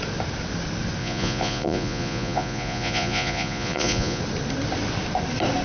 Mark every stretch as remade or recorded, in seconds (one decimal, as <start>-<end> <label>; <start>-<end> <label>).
0.0-1.0 recorded; 1.0-4.2 remade; 4.2-5.6 recorded